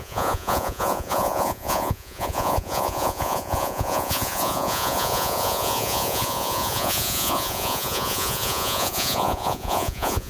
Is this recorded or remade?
remade